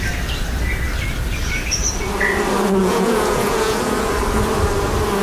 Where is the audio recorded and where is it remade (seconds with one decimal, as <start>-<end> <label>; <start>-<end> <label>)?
0.0-2.8 recorded; 2.8-4.1 remade; 4.1-5.2 recorded